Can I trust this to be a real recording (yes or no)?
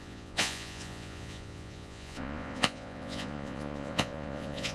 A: no